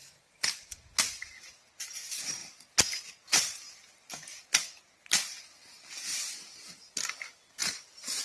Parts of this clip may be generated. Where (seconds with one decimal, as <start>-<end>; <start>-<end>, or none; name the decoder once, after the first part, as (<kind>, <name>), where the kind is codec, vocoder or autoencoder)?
0.0-1.1 (vocoder, BigVGAN v2); 7.6-8.2